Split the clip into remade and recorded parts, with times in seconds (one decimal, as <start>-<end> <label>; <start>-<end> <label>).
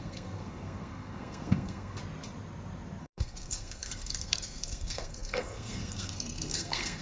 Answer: 0.0-2.0 remade; 2.0-3.0 recorded; 3.0-7.0 remade